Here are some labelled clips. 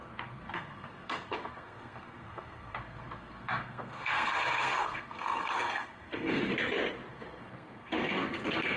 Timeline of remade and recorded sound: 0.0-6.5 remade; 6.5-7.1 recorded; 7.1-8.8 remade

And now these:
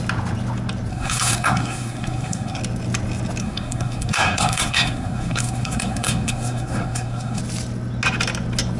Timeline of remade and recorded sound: 0.0-0.9 recorded; 0.9-2.6 remade; 2.6-3.4 recorded; 3.4-7.4 remade; 7.4-8.8 recorded

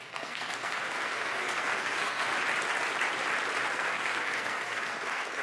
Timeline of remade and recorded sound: 0.0-2.3 remade; 2.3-3.7 recorded; 3.7-5.4 remade

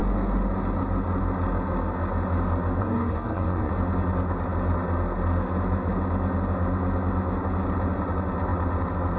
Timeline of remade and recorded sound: 0.0-2.8 recorded; 2.8-3.7 remade; 3.7-9.2 recorded

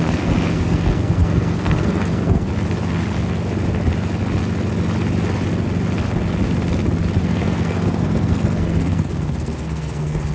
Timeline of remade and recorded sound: 0.0-2.5 remade; 2.5-7.2 recorded; 7.2-10.3 remade

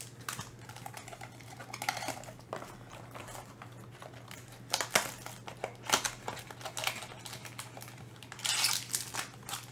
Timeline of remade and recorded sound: 0.0-9.7 recorded